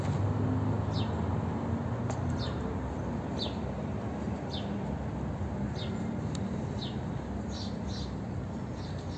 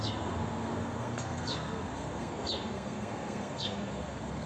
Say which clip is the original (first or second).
first